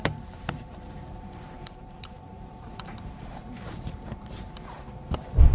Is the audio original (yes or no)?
no